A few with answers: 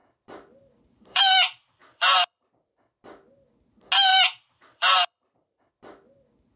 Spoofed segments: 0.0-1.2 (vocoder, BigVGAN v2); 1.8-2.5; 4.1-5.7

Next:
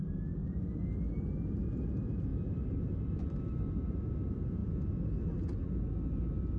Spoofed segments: 0.0-0.4 (vocoder, BigVGAN v2); 1.1-2.3; 3.7-4.6

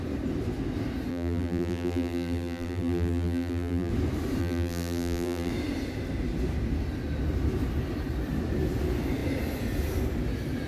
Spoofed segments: 1.1-3.9 (vocoder, BigVGAN v2); 4.4-5.5

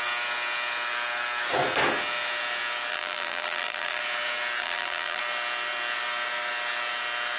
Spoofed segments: 2.9-4.0 (vocoder, BigVGAN v2); 4.6-5.2

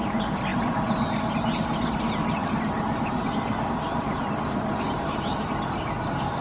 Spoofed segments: 2.4-6.4 (vocoder, BigVGAN v2)

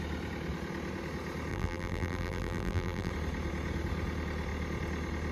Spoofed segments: 1.5-3.1 (vocoder, BigVGAN v2)

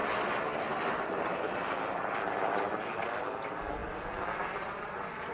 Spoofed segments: 0.0-3.2 (vocoder, BigVGAN v2)